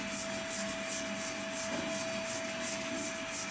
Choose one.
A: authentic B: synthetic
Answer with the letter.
A